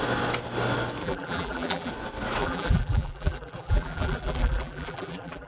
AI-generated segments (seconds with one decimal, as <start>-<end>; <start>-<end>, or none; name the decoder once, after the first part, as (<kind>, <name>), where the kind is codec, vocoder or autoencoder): 1.0-1.9 (vocoder, BigVGAN v2); 2.4-5.5